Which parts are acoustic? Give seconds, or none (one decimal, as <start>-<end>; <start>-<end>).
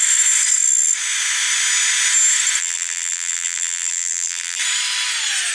0.0-2.6; 4.6-5.5